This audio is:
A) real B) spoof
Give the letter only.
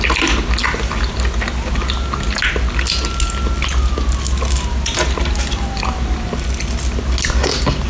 A